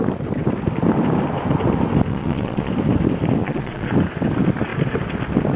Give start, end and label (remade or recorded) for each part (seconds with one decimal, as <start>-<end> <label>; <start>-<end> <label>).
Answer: 0.0-2.1 recorded; 2.1-2.7 remade; 2.7-3.4 recorded; 3.4-3.9 remade; 3.9-5.6 recorded

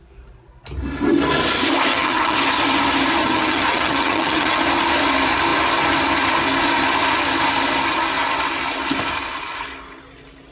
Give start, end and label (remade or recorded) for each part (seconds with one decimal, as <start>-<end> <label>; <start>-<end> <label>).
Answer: 0.0-1.9 recorded; 1.9-2.4 remade; 2.4-3.2 recorded; 3.2-4.6 remade; 4.6-10.5 recorded

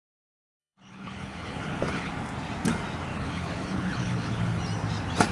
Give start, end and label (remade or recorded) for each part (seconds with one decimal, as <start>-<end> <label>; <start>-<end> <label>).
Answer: 0.0-0.6 recorded; 0.6-2.1 remade; 2.1-3.1 recorded; 3.1-4.6 remade; 4.6-5.3 recorded

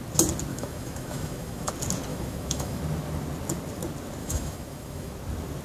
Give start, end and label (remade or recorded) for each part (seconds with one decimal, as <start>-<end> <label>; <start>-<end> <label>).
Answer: 0.0-0.5 recorded; 0.5-1.7 remade; 1.7-2.1 recorded; 2.1-2.8 remade; 2.8-4.2 recorded; 4.2-5.1 remade; 5.1-5.6 recorded

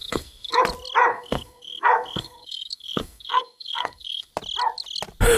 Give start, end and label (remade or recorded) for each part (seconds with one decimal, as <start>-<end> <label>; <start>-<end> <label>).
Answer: 0.0-0.6 remade; 0.6-1.1 recorded; 1.1-4.3 remade; 4.3-5.4 recorded

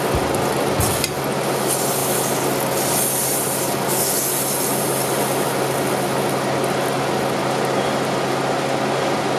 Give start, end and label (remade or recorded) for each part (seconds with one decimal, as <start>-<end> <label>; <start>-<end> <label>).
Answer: 0.0-9.4 recorded

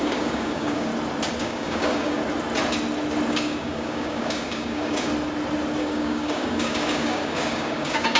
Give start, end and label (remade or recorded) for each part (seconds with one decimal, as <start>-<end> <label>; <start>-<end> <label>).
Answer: 0.0-0.9 remade; 0.9-1.4 recorded; 1.4-2.2 remade; 2.2-3.3 recorded; 3.3-5.1 remade; 5.1-5.8 recorded; 5.8-8.2 remade